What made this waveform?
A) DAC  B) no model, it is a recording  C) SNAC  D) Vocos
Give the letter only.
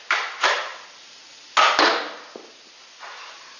B